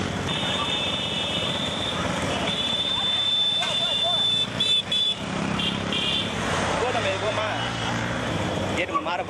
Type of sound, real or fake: fake